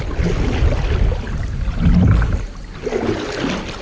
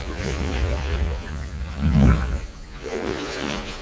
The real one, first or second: first